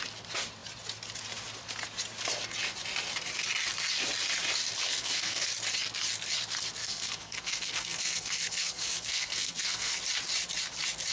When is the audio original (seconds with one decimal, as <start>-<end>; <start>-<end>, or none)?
0.0-4.9; 5.5-6.8; 10.0-11.1